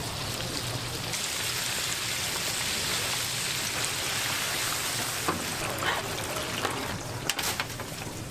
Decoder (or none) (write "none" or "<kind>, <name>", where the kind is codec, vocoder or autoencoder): none